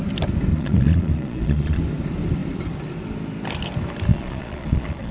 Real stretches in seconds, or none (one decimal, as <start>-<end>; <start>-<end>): 0.0-0.5; 1.8-4.1